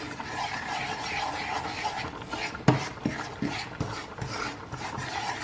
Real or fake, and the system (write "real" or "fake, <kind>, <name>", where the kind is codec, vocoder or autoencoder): real